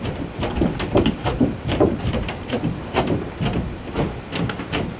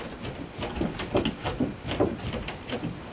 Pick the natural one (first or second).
second